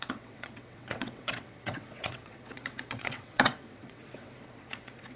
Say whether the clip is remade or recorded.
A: remade